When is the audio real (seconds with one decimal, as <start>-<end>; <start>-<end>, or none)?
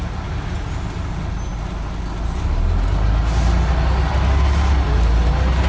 0.0-5.7